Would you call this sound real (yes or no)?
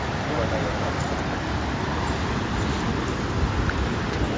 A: yes